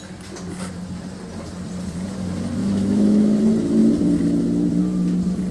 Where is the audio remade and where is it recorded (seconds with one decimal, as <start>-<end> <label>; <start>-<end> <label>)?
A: 0.0-2.6 recorded; 2.6-3.4 remade; 3.4-5.5 recorded